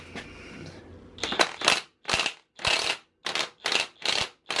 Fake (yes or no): no